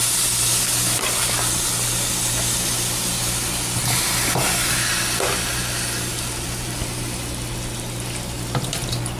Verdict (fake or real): real